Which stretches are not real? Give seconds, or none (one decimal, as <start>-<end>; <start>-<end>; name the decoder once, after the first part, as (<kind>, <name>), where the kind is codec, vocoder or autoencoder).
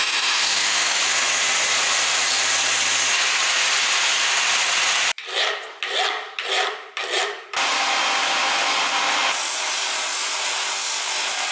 0.0-1.0 (autoencoder, DAC-VAE)